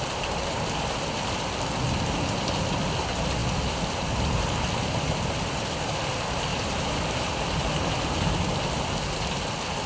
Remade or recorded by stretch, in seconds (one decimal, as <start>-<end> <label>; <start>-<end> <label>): 0.0-6.5 recorded; 6.5-8.5 remade; 8.5-9.9 recorded